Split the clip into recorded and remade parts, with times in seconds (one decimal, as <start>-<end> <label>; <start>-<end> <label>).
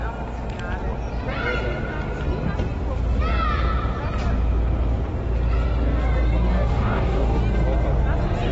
0.0-6.5 recorded; 6.5-7.4 remade; 7.4-8.5 recorded